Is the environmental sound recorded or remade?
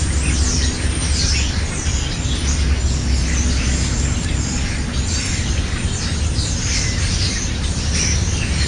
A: recorded